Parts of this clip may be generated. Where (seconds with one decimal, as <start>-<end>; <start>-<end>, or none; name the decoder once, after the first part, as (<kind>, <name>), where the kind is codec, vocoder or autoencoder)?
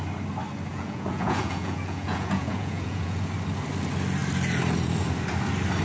0.7-3.3 (vocoder, Vocos)